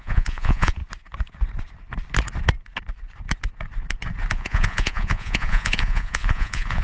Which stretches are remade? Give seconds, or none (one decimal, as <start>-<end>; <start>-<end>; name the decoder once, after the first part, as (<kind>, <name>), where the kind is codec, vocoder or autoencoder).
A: 0.0-0.8 (vocoder, Vocos); 4.3-6.8